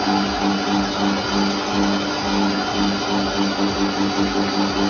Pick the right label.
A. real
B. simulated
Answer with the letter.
A